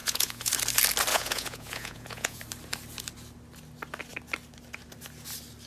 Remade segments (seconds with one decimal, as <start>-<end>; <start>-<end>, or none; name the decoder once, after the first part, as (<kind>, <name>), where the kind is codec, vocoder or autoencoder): 0.0-0.5 (vocoder, Vocos); 1.1-2.4